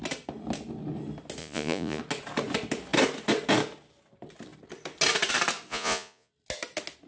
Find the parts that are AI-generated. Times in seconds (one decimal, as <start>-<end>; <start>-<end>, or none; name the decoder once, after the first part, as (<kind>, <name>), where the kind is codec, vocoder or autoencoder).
1.4-2.0 (vocoder, Vocos); 5.7-6.3